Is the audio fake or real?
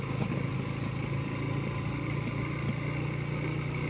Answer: real